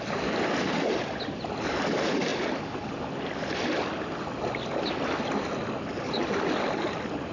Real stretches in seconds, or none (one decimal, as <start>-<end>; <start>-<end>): 0.0-7.3

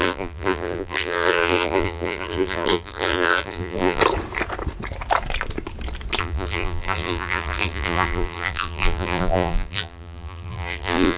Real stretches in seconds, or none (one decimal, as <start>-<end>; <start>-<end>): 4.0-6.2

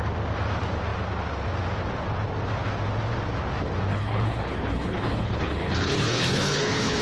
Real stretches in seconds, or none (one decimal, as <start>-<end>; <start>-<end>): 0.0-3.9

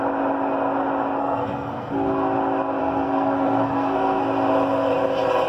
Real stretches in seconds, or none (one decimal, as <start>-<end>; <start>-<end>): 0.0-1.2; 1.9-2.8; 4.2-5.5